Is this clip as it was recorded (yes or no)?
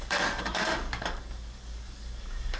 no